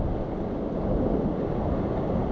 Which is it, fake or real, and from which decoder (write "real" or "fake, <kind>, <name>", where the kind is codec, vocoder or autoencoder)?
real